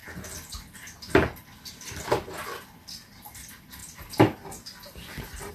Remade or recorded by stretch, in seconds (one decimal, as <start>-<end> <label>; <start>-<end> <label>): 0.0-5.5 recorded